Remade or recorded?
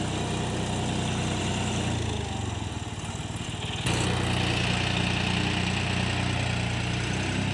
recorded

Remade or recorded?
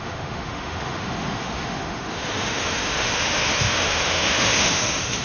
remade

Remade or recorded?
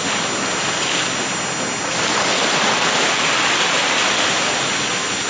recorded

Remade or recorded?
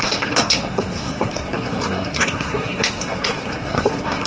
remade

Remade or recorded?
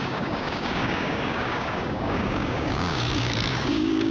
remade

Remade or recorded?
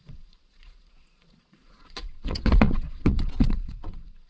remade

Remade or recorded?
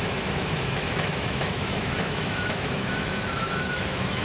remade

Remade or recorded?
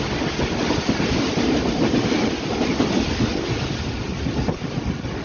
recorded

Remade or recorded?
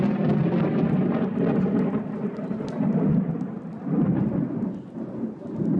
recorded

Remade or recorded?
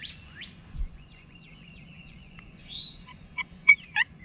remade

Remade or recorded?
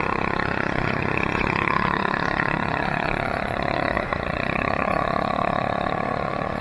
remade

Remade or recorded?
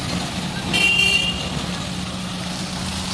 recorded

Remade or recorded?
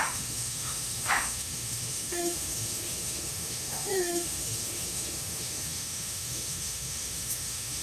remade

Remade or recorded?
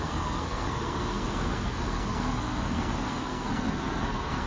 remade